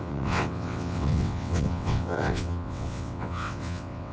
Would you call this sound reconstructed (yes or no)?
yes